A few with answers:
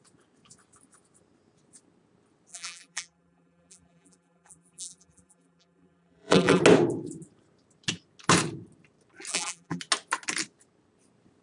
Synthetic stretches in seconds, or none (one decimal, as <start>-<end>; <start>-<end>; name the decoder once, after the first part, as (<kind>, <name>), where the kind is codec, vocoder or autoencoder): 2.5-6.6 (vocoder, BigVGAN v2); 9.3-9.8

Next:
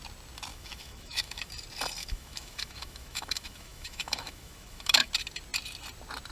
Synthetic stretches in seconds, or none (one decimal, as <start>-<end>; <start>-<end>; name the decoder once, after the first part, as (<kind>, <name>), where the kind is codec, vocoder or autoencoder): 0.5-1.5 (autoencoder, DAC-VAE); 2.0-5.1

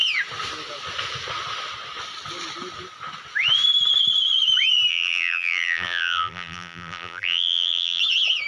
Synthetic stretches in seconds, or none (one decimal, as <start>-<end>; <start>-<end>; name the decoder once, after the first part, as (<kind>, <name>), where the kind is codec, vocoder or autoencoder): 4.9-8.0 (vocoder, BigVGAN v2)

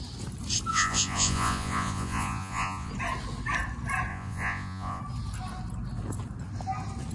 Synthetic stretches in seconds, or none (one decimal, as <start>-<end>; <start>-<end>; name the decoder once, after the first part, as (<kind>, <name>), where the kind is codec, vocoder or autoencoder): 0.7-2.9 (vocoder, Vocos); 4.1-5.0

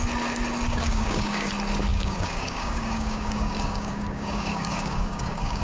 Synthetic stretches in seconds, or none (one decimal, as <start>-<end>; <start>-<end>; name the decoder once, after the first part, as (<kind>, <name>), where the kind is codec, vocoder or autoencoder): 0.7-1.5 (codec, DAC); 1.9-5.6